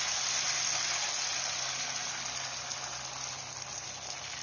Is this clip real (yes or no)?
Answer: yes